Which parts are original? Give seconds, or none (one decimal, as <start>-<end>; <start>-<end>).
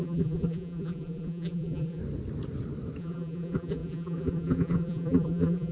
2.0-3.0